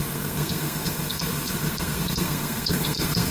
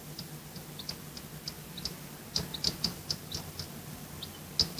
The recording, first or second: second